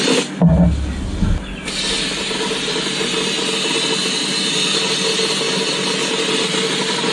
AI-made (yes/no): no